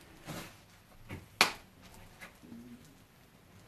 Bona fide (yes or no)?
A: yes